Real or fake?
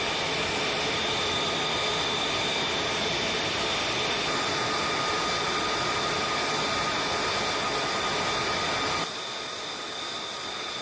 real